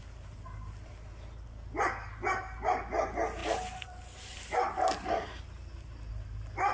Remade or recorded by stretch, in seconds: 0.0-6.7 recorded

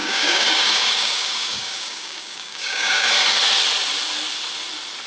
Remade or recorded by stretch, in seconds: 0.0-3.1 remade; 3.1-5.1 recorded

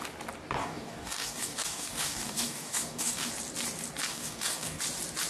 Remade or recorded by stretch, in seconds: 0.0-0.6 recorded; 0.6-3.3 remade; 3.3-4.1 recorded; 4.1-4.8 remade; 4.8-5.3 recorded

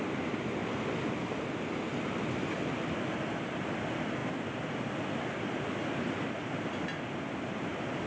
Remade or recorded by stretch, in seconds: 0.0-8.1 recorded

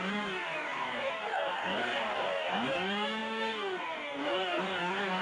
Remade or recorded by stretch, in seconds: 0.0-5.2 remade

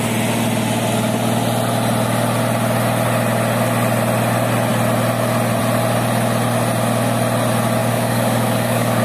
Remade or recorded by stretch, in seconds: 0.0-7.8 recorded; 7.8-9.0 remade

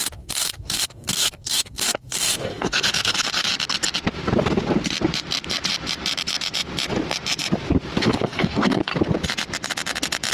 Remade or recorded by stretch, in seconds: 0.0-3.5 remade; 3.5-8.0 recorded; 8.0-8.9 remade; 8.9-10.3 recorded

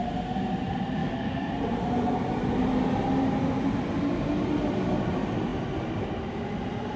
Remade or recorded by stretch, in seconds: 0.0-1.0 recorded; 1.0-1.5 remade; 1.5-7.0 recorded